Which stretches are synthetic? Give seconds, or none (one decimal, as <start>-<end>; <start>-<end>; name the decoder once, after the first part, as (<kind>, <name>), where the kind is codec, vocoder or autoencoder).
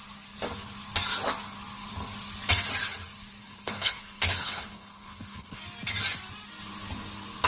3.4-5.6 (codec, HILCodec)